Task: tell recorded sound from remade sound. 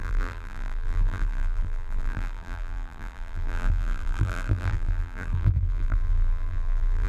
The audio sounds remade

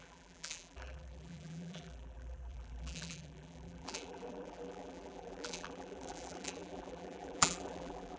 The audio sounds remade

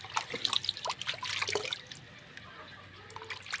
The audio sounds recorded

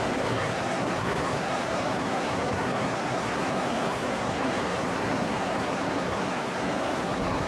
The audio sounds remade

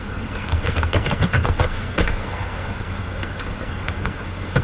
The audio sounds remade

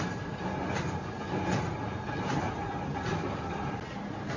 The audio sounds recorded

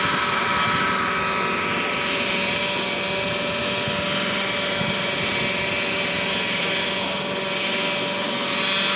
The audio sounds recorded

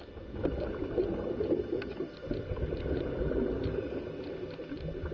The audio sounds recorded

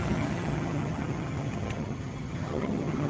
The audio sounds remade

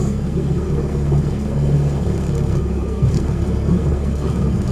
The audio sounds remade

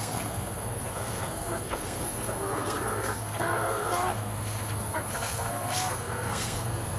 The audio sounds remade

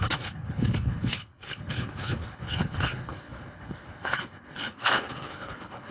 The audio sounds remade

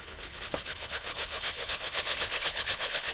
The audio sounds remade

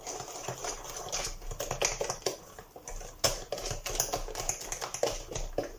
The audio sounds recorded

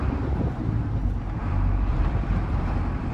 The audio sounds remade